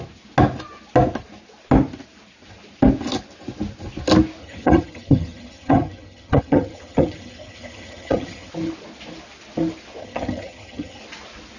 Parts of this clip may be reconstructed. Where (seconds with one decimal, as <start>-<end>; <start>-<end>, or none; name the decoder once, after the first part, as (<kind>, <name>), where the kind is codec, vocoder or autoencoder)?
4.4-8.5 (vocoder, HiFi-GAN); 10.0-11.0